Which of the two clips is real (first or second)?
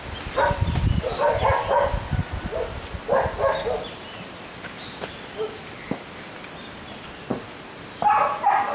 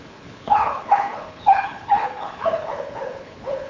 first